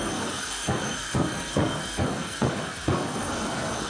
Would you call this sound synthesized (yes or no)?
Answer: yes